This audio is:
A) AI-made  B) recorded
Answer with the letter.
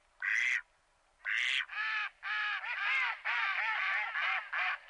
B